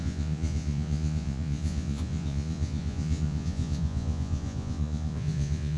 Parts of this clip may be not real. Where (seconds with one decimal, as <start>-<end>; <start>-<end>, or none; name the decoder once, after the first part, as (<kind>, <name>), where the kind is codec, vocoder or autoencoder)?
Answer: 0.0-5.8 (vocoder, Vocos)